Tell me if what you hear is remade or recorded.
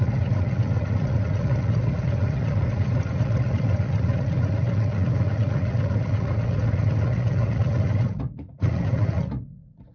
remade